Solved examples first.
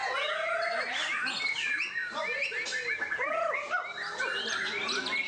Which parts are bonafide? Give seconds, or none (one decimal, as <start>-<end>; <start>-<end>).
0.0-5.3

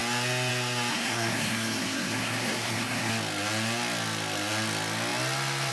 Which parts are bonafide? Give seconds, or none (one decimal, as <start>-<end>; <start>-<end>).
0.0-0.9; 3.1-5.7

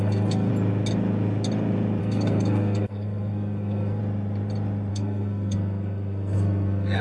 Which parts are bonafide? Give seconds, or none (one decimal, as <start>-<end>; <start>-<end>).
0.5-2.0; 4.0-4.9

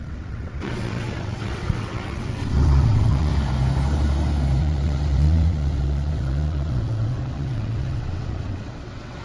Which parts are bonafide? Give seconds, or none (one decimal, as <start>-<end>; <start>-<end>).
3.3-4.6

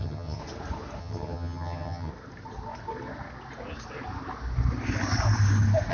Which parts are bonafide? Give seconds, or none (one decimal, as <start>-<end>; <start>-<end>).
0.4-1.0; 2.1-5.9

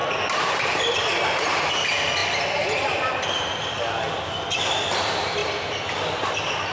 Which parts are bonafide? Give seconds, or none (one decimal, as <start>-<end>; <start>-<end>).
0.0-0.9; 5.4-6.7